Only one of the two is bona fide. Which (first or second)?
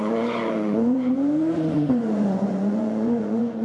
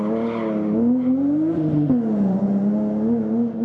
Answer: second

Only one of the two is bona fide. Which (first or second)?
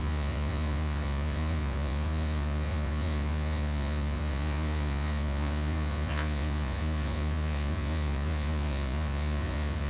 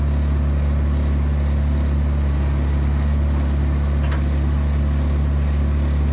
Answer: second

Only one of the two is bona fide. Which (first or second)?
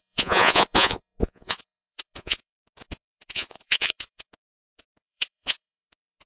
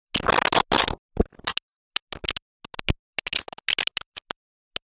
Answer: second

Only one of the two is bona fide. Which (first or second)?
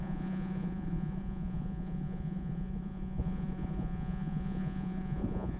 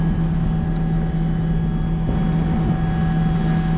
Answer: second